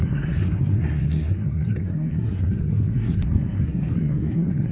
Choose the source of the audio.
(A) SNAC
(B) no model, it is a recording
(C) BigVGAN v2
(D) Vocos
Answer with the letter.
A